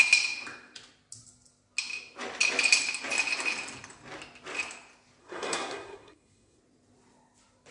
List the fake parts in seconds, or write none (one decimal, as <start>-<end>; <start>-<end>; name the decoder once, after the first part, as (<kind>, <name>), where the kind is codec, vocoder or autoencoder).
5.2-6.6 (codec, SNAC)